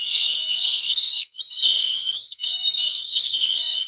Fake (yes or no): yes